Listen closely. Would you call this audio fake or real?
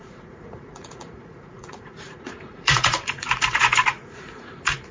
fake